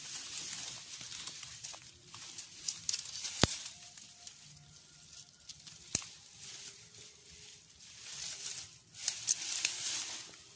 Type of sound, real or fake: real